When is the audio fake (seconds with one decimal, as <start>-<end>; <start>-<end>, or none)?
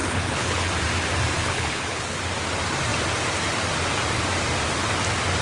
0.0-0.7; 1.4-2.2